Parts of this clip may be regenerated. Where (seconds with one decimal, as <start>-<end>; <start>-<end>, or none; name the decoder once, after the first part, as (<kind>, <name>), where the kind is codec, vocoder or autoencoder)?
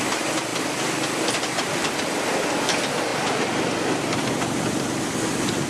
0.5-2.0 (vocoder, BigVGAN v2)